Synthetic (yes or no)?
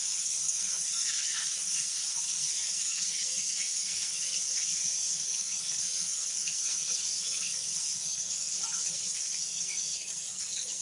yes